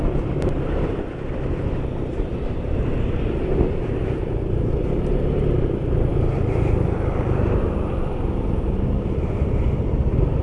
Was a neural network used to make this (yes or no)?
yes